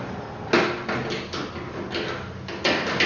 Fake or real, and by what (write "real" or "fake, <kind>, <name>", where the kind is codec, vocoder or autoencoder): real